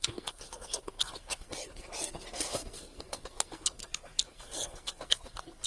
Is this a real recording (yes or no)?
no